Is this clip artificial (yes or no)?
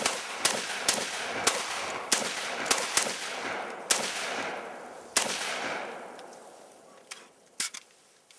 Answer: no